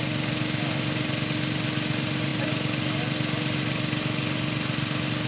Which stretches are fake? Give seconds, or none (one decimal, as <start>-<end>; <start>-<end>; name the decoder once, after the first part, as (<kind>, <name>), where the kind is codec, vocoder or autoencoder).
none